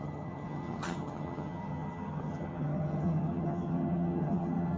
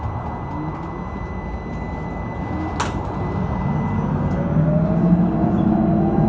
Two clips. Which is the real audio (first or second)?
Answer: second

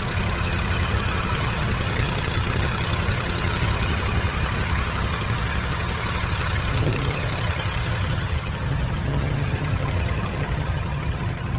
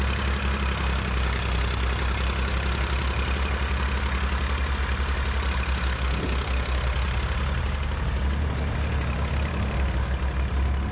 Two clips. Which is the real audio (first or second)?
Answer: second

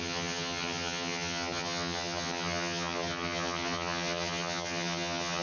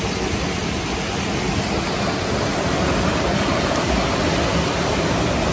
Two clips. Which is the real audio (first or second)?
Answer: second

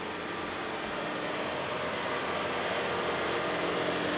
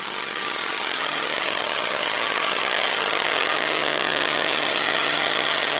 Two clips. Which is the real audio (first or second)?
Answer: first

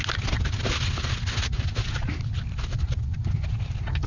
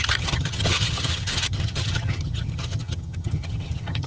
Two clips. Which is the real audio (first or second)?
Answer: first